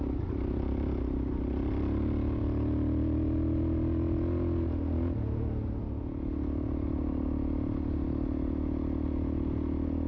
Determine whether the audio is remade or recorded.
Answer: recorded